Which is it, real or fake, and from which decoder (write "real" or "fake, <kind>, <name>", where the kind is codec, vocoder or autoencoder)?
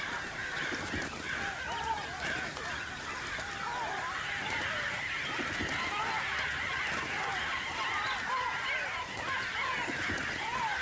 real